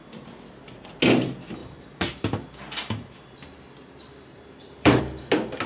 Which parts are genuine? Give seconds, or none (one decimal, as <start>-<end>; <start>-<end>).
0.0-1.6; 5.0-5.7